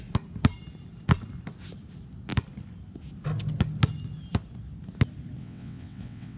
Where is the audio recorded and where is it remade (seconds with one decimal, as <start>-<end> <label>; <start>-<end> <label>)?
0.0-5.4 recorded; 5.4-6.4 remade

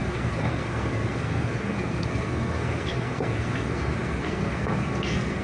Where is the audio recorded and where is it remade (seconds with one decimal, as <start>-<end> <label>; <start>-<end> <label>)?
0.0-5.4 remade

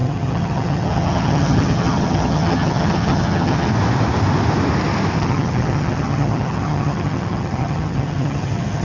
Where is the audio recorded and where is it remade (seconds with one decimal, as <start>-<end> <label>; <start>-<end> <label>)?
0.0-3.7 remade; 3.7-5.2 recorded; 5.2-8.8 remade

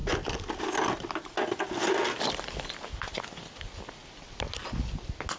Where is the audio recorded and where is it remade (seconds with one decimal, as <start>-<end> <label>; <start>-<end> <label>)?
0.0-5.4 recorded

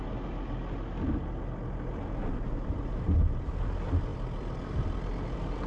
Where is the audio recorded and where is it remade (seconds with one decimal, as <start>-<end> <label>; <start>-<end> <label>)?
0.0-5.7 recorded

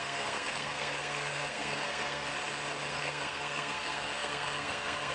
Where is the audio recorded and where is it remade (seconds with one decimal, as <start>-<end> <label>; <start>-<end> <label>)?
0.0-2.3 remade; 2.3-2.9 recorded; 2.9-5.1 remade